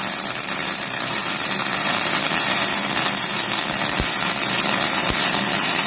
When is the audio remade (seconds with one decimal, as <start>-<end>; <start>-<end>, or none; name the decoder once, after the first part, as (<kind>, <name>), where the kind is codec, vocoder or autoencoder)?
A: 0.0-5.9 (vocoder, BigVGAN v2)